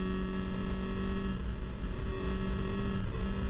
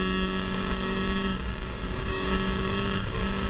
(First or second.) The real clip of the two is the first